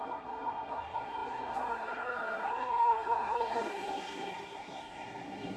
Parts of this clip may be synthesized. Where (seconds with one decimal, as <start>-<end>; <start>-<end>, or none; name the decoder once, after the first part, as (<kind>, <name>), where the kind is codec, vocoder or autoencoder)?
0.0-5.6 (codec, SNAC)